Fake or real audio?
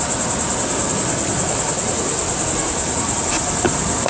real